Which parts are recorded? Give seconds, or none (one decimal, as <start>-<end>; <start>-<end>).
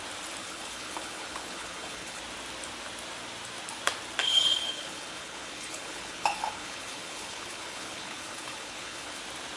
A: 0.0-0.4; 2.2-4.2; 9.2-9.6